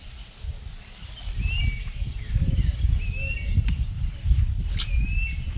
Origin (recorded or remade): recorded